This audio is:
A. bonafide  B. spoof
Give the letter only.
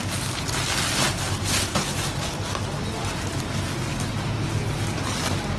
A